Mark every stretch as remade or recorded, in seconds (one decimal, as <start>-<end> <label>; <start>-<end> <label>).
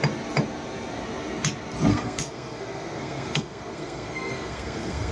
0.0-1.9 recorded; 1.9-5.1 remade